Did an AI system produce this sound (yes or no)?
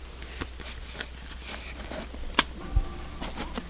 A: no